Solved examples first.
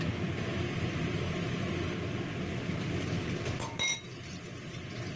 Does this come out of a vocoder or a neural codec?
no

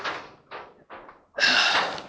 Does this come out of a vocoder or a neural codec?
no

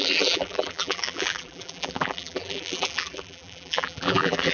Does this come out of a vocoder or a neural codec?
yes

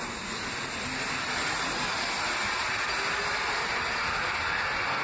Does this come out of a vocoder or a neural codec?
no